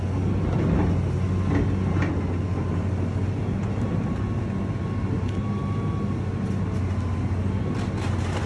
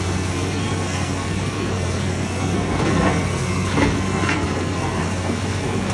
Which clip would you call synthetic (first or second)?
second